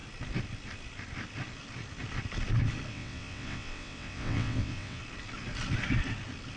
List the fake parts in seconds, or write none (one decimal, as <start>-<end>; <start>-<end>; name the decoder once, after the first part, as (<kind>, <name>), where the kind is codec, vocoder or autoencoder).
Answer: 2.9-5.0 (vocoder, WaveNeXt)